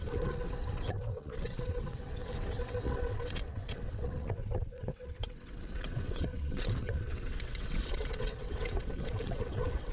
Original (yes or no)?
no